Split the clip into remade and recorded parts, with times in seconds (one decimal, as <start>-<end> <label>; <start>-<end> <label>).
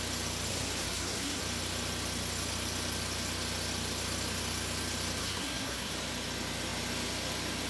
0.0-0.5 recorded; 0.5-1.4 remade; 1.4-5.2 recorded; 5.2-5.9 remade; 5.9-7.7 recorded